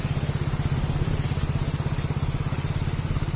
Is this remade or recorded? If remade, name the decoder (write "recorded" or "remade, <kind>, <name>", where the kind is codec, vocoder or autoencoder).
recorded